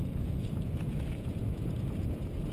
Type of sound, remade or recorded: remade